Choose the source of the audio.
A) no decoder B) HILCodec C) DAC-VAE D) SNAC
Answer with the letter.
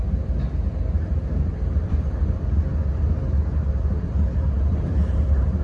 A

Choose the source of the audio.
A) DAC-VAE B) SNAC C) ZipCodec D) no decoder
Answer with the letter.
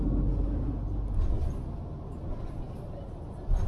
D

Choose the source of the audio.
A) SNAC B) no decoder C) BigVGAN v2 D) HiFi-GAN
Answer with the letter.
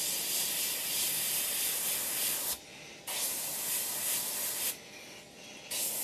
B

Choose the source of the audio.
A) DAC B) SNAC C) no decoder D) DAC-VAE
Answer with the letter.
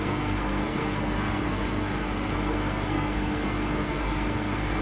B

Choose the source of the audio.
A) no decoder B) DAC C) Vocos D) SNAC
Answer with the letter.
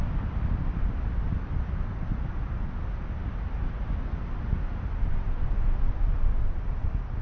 A